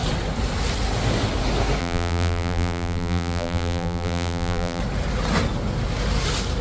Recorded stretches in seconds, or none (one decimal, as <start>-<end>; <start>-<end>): 0.0-1.8; 4.8-6.6